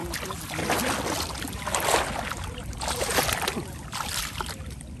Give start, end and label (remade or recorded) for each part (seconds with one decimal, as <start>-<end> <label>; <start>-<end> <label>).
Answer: 0.0-5.0 recorded